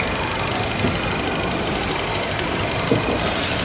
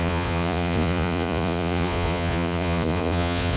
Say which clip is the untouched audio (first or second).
first